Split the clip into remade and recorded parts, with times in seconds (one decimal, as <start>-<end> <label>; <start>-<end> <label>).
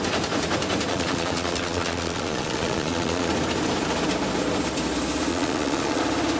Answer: 0.0-0.9 recorded; 0.9-3.3 remade; 3.3-5.3 recorded; 5.3-6.0 remade; 6.0-6.4 recorded